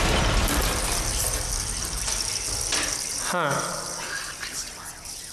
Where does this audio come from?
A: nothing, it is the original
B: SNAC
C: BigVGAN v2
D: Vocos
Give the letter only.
A